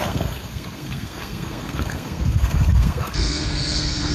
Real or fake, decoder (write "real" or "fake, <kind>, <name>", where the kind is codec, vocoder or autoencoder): fake, codec, SNAC